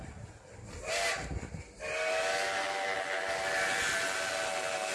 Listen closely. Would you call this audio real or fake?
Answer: real